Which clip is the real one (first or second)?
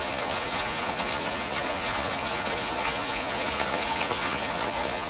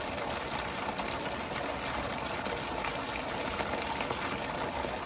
second